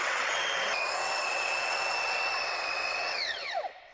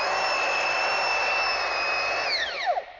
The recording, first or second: second